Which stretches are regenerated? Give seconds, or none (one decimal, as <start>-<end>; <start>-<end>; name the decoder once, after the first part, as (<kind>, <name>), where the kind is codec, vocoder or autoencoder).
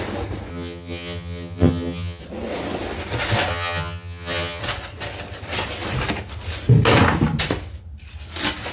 0.5-2.2 (vocoder, HiFi-GAN); 3.5-4.6